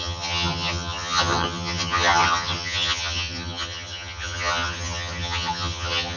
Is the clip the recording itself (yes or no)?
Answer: no